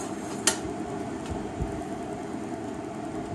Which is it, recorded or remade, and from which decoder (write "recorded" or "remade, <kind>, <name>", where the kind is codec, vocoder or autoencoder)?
recorded